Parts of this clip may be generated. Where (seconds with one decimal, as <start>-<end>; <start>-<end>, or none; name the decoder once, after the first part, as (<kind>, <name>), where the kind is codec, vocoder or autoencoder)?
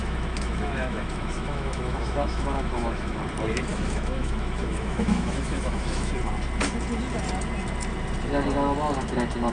0.0-3.2 (autoencoder, DAC-VAE); 3.7-6.1